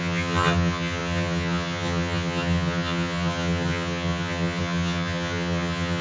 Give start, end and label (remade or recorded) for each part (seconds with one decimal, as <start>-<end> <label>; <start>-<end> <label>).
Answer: 0.0-6.0 remade